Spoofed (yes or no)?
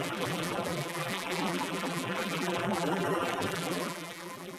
yes